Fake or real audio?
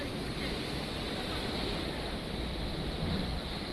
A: real